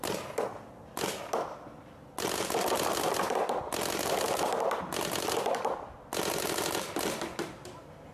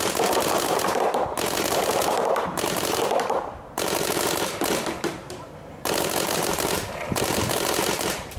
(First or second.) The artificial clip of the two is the second